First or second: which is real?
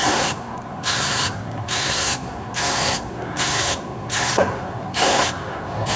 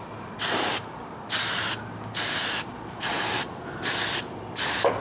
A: second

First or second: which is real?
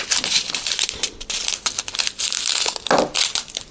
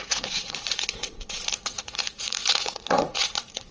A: first